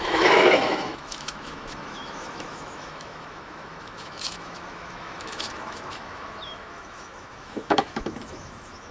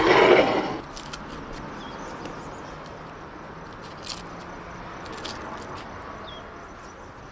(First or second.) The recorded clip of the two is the second